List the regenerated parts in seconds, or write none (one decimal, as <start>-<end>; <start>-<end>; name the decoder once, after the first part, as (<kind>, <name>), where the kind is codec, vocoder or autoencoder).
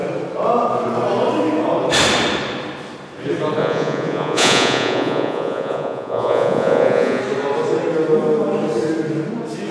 3.6-7.2 (vocoder, Vocos)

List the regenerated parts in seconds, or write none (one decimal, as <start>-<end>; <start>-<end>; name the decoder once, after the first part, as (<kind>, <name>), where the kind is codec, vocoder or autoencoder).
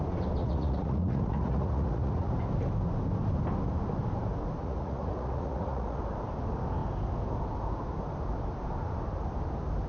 0.4-2.3 (vocoder, Vocos); 4.6-6.0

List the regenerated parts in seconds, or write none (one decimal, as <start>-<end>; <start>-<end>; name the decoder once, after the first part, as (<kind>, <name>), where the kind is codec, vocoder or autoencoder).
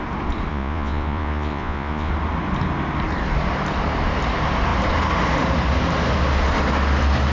0.5-2.1 (vocoder, Vocos)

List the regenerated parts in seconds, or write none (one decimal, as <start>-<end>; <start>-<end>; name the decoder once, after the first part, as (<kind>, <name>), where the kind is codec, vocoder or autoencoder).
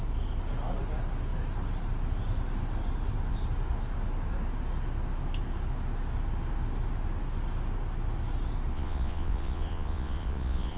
8.7-10.8 (vocoder, Vocos)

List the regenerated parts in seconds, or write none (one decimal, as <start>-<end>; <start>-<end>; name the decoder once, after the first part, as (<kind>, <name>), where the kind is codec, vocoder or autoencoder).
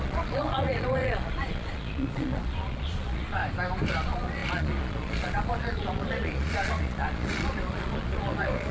0.0-3.4 (vocoder, Vocos); 3.9-8.7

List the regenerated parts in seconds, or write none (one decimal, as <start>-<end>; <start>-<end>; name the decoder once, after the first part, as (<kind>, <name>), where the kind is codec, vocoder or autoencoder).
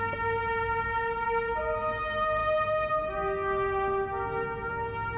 none